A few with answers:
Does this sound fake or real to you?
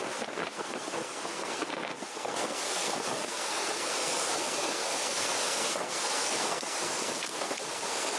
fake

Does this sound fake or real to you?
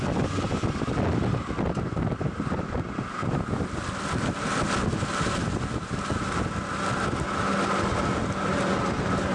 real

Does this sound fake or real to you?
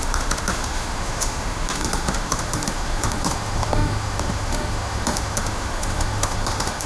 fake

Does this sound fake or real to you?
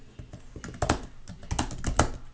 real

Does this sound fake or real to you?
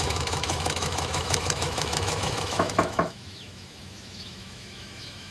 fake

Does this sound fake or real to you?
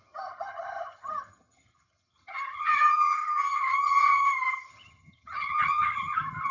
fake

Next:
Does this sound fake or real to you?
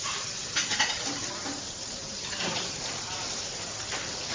fake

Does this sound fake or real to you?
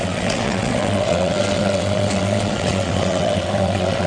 fake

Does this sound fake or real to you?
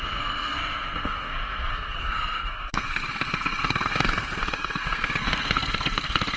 fake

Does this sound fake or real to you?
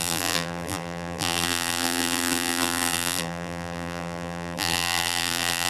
fake